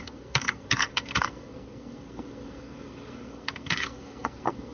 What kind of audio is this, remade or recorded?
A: remade